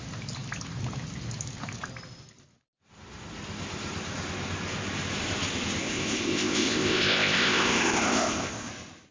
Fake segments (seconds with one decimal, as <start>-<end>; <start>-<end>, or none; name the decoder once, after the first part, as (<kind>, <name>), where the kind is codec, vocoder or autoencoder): 5.8-8.7 (codec, ZipCodec)

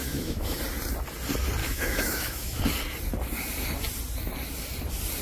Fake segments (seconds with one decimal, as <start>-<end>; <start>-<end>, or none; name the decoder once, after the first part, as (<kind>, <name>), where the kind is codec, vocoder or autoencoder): 0.0-0.6 (autoencoder, DAC-VAE); 1.6-2.6

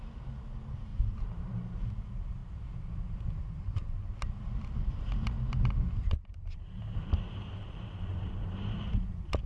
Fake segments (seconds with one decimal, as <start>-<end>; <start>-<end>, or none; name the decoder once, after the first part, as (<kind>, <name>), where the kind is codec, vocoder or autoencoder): 0.9-1.9 (vocoder, BigVGAN v2); 6.0-9.0

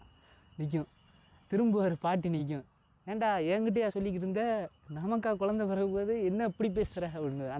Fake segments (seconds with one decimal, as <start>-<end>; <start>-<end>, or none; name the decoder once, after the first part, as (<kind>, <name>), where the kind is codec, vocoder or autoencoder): none